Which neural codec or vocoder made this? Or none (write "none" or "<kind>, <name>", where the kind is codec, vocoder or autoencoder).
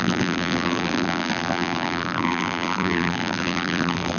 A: vocoder, BigVGAN v2